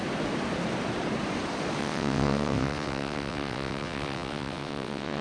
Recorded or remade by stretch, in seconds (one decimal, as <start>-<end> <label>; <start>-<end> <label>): 0.0-1.8 recorded; 1.8-5.2 remade